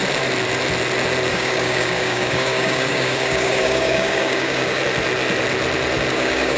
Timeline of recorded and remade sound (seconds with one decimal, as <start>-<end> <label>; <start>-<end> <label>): 0.0-1.3 recorded; 1.3-4.8 remade; 4.8-6.1 recorded; 6.1-6.6 remade